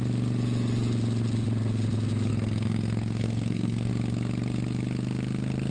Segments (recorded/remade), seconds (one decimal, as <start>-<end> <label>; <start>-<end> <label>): 0.0-2.3 recorded; 2.3-3.9 remade; 3.9-5.7 recorded